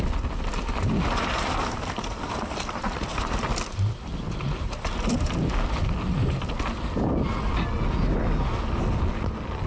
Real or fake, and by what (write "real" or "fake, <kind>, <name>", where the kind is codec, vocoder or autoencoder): real